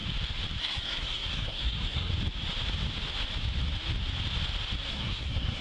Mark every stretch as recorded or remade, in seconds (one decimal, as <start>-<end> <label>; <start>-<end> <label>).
0.0-0.6 recorded; 0.6-2.1 remade; 2.1-4.9 recorded; 4.9-5.6 remade